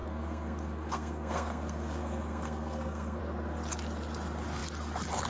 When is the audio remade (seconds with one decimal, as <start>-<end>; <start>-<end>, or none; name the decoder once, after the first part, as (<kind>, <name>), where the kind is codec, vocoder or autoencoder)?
0.0-3.2 (codec, SNAC)